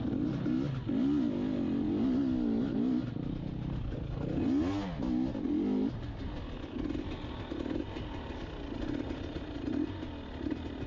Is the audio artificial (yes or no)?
no